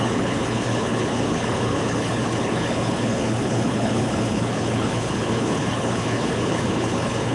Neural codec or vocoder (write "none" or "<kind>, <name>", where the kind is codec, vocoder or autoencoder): codec, HILCodec